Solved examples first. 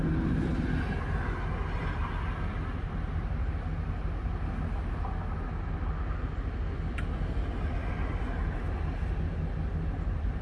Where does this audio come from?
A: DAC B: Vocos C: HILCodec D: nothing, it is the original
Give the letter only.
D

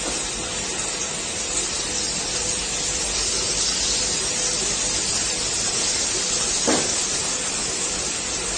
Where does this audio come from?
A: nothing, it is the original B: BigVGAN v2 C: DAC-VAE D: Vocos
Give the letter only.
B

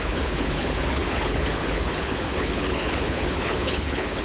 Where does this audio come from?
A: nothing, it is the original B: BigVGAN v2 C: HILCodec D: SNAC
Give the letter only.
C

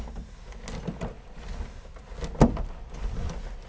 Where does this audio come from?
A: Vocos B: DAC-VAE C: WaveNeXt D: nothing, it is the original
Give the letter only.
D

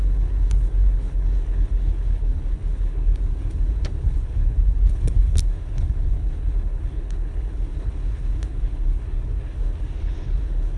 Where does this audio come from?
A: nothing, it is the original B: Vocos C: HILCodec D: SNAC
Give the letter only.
C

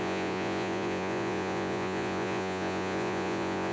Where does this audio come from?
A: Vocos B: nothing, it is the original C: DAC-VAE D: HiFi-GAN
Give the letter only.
A